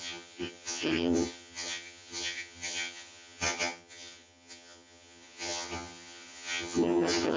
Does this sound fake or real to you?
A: fake